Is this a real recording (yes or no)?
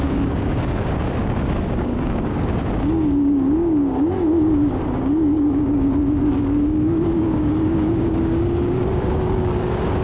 no